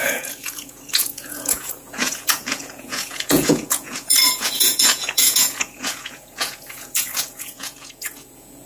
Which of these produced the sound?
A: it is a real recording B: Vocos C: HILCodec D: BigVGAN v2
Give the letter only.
B